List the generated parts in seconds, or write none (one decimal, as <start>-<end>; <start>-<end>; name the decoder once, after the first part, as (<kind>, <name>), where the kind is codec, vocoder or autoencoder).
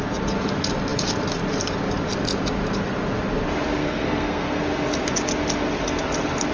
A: 3.8-4.6 (codec, SNAC)